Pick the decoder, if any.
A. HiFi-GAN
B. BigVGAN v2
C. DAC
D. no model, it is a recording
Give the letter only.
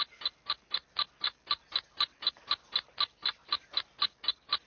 D